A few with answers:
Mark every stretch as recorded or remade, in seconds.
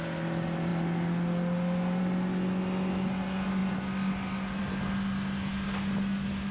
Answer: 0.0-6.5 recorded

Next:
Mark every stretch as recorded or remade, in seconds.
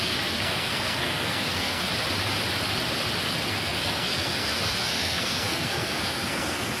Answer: 0.0-1.9 remade; 1.9-3.5 recorded; 3.5-6.8 remade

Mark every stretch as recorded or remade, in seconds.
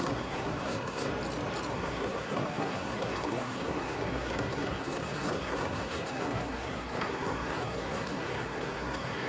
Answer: 0.0-1.1 remade; 1.1-1.7 recorded; 1.7-9.3 remade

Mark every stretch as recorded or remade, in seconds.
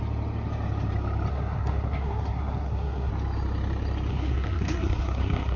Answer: 0.0-1.3 recorded; 1.3-3.1 remade; 3.1-4.1 recorded; 4.1-5.6 remade